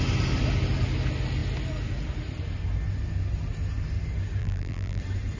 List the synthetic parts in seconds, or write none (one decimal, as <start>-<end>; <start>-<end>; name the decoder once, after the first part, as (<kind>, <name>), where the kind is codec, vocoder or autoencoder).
4.4-5.0 (vocoder, BigVGAN v2)